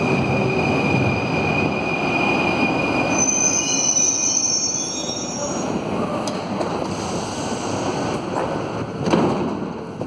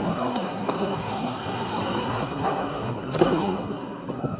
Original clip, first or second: first